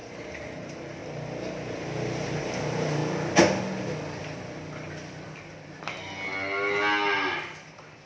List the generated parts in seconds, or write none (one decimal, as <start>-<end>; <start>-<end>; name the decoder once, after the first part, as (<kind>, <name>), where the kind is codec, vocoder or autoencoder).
0.0-1.0 (vocoder, BigVGAN v2); 2.4-3.0